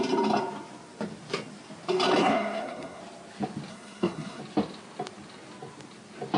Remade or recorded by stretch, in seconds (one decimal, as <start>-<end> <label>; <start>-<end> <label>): 0.0-2.2 recorded; 2.2-3.0 remade; 3.0-3.7 recorded; 3.7-4.4 remade; 4.4-6.4 recorded